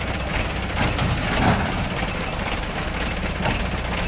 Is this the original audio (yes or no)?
yes